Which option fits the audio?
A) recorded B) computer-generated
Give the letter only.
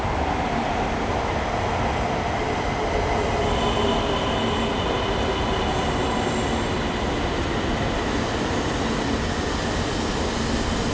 A